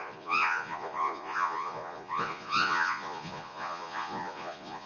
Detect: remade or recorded remade